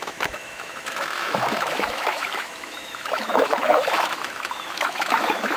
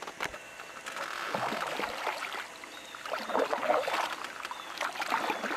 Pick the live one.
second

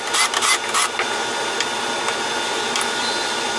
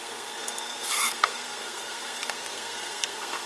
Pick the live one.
first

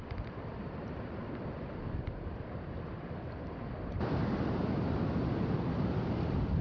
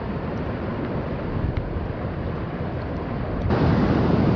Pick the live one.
second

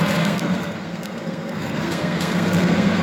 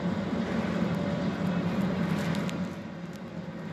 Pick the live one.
second